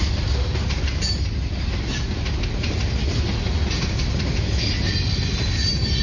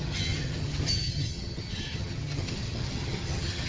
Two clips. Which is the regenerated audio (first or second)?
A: second